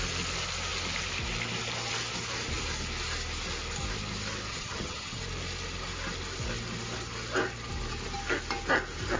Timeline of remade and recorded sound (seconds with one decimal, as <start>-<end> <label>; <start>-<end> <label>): 0.0-4.5 recorded; 4.5-5.2 remade; 5.2-9.2 recorded